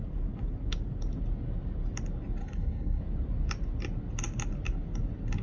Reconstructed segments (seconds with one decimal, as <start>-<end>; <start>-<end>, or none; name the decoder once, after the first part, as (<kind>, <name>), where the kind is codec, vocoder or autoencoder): 2.4-3.0 (codec, HILCodec)